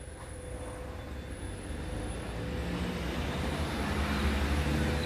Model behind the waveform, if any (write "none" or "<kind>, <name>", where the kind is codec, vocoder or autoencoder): none